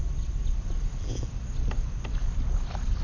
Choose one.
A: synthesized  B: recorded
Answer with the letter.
B